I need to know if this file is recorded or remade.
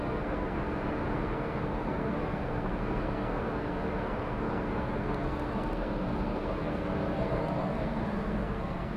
remade